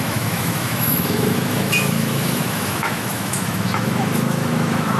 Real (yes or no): no